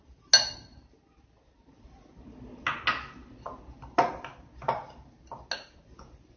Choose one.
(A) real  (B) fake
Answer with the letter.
A